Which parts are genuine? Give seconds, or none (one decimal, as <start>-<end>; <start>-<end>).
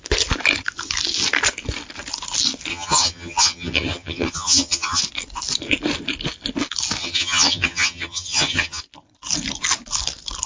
0.0-2.7; 5.0-7.0; 8.8-10.5